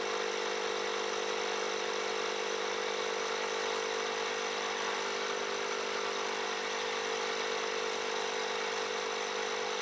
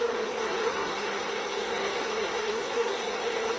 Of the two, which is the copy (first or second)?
second